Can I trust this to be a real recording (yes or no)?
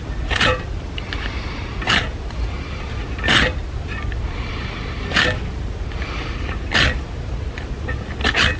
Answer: yes